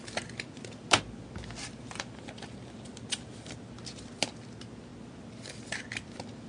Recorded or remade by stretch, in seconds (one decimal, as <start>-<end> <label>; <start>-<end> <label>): 0.0-6.5 recorded